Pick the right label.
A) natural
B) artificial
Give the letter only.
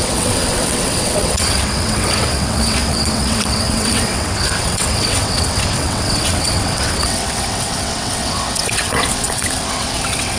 B